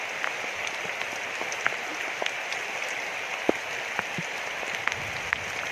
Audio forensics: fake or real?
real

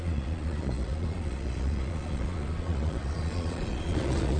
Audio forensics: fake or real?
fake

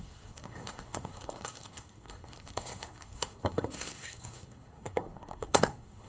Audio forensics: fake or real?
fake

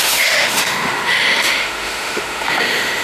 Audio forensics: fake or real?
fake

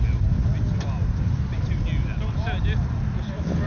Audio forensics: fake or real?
real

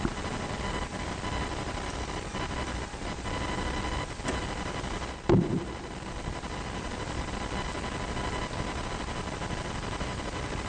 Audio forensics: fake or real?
real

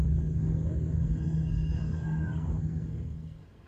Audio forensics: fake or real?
fake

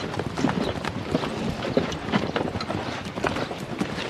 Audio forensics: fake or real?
real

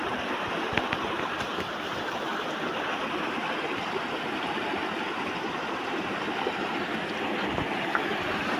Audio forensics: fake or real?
fake